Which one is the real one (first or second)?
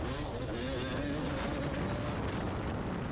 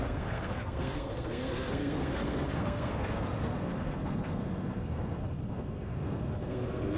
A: first